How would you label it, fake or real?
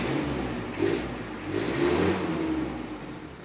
real